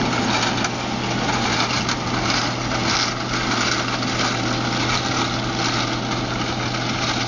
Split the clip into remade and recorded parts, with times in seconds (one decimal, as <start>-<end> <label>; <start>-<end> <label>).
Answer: 0.0-7.3 recorded